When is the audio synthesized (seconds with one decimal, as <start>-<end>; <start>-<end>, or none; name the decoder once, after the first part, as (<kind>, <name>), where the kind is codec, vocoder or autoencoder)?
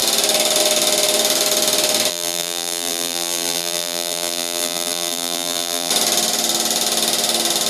2.1-5.9 (vocoder, BigVGAN v2)